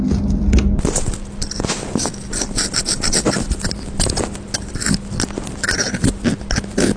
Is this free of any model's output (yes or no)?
yes